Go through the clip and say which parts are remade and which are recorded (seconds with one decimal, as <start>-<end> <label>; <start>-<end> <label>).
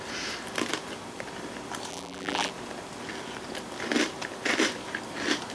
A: 0.0-1.9 recorded; 1.9-2.5 remade; 2.5-5.5 recorded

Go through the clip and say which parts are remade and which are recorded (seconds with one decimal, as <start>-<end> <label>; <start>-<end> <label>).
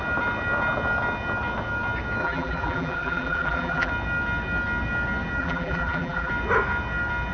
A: 0.0-2.2 recorded; 2.2-3.9 remade; 3.9-5.4 recorded; 5.4-6.3 remade; 6.3-7.3 recorded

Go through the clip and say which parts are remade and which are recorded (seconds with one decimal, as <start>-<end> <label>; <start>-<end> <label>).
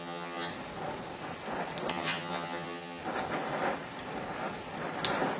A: 0.0-0.5 remade; 0.5-1.9 recorded; 1.9-3.0 remade; 3.0-5.4 recorded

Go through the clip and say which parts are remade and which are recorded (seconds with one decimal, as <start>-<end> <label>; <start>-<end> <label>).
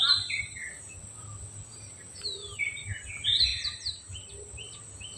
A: 0.0-1.7 recorded; 1.7-2.8 remade; 2.8-3.5 recorded; 3.5-4.1 remade; 4.1-5.2 recorded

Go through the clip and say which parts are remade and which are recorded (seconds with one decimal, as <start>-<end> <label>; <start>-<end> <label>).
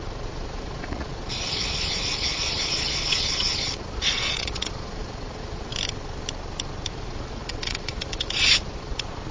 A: 0.0-5.7 remade; 5.7-6.9 recorded; 6.9-9.3 remade